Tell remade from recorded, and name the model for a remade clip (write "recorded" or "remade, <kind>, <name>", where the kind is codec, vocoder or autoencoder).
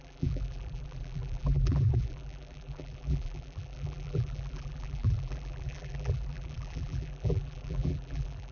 remade, vocoder, BigVGAN v2